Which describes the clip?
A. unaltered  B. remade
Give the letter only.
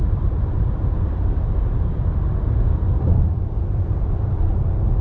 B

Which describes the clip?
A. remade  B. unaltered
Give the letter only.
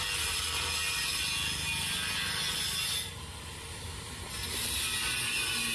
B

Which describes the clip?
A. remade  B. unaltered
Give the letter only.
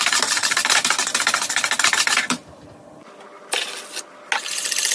B